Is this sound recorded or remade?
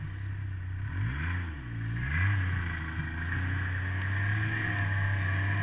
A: recorded